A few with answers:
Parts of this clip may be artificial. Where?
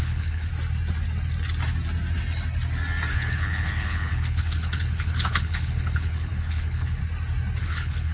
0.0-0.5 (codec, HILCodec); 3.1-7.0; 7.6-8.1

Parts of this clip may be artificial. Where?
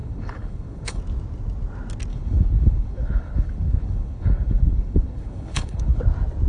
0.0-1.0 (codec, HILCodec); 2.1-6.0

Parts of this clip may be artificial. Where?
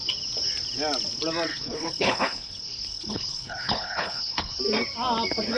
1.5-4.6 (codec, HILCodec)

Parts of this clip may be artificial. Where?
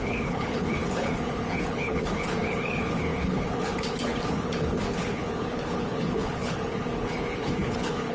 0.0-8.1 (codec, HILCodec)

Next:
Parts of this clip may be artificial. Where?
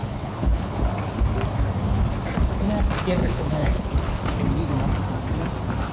0.0-0.8 (codec, HILCodec); 3.2-4.2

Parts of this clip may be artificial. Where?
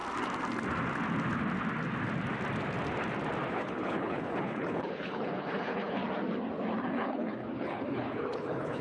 3.5-6.0 (codec, HILCodec); 6.8-8.8